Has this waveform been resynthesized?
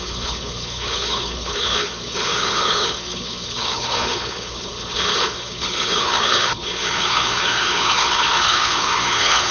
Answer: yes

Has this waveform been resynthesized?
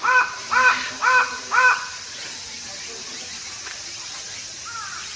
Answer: no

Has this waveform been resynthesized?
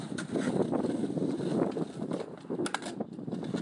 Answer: no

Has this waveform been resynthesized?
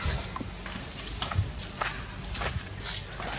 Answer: no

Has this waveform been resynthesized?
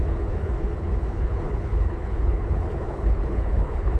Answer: yes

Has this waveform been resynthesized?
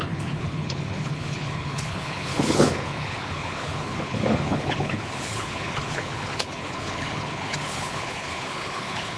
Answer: yes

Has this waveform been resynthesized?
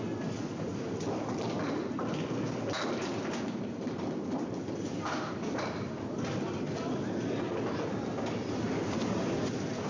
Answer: no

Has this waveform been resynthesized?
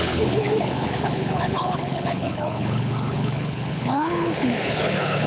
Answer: yes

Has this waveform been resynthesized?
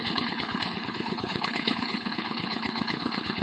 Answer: yes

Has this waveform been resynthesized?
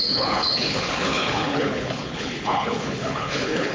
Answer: yes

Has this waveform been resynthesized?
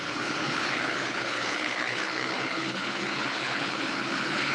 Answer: yes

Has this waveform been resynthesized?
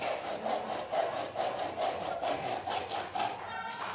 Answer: no